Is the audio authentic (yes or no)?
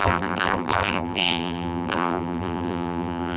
no